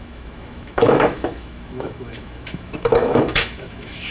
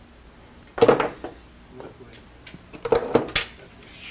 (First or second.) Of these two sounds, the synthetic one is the first